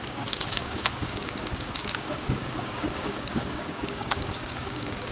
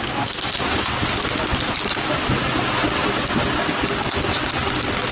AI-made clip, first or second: first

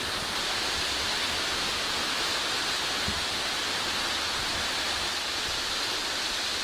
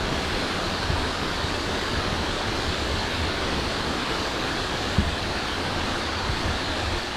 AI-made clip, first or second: second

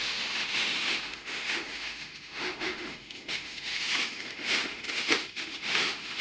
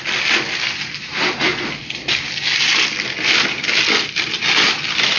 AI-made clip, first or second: first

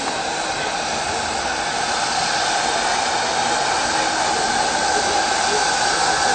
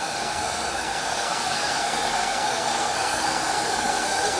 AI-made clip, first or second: second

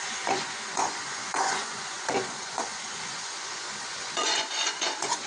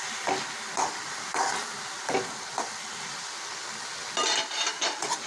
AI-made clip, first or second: first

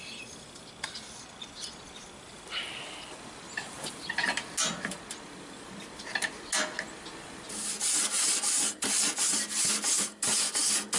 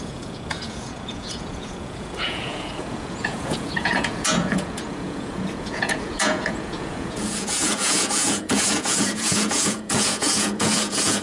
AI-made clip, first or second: second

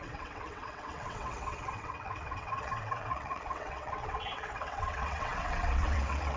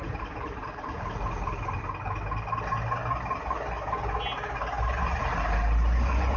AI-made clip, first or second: first